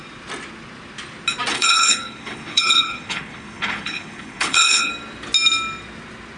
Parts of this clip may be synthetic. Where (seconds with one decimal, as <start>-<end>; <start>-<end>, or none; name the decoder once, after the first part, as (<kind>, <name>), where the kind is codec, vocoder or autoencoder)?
1.5-4.9 (codec, HILCodec)